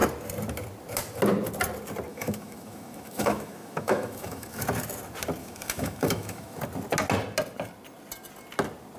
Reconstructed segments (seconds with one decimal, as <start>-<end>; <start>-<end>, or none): 2.1-4.6; 5.4-6.6

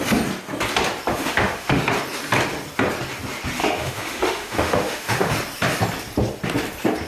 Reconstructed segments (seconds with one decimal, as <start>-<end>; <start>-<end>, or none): 1.1-1.8; 3.6-5.3

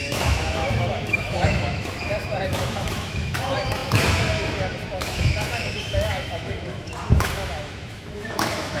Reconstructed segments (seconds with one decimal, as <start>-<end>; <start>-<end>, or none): 0.0-8.8

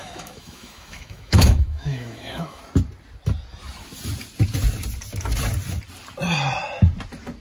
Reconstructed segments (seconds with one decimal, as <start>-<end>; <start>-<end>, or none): 0.0-2.6

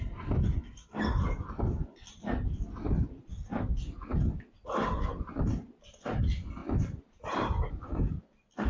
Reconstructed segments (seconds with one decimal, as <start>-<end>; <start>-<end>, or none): none

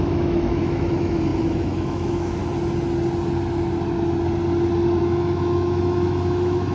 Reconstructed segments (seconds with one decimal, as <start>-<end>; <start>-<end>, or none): 0.0-2.4; 5.0-6.7

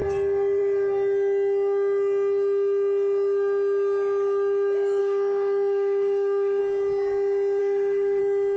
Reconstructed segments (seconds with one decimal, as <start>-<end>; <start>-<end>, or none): 5.0-6.6; 7.6-8.2